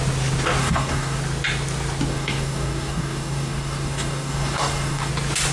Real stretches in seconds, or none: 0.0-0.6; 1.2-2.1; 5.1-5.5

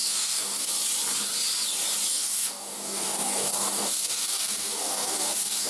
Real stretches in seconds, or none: 0.7-2.1

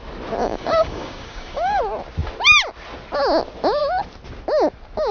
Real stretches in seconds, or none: 0.0-0.4; 1.8-5.1